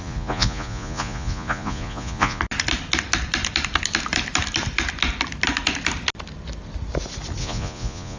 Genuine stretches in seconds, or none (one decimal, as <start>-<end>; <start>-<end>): 2.4-7.4